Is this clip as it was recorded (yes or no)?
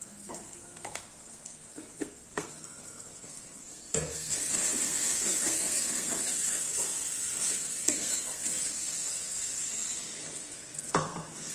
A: no